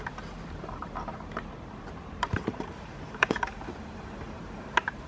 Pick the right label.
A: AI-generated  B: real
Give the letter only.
A